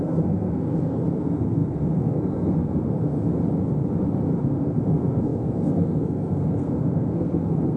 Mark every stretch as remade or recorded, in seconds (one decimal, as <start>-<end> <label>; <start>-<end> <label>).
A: 0.0-3.3 remade; 3.3-4.4 recorded; 4.4-7.8 remade